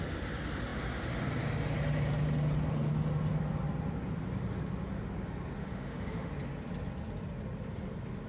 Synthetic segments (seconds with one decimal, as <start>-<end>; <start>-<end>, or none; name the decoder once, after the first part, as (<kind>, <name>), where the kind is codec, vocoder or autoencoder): 5.6-6.3 (autoencoder, DAC-VAE)